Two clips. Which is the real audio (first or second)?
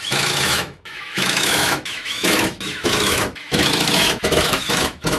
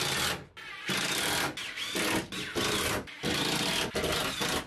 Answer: second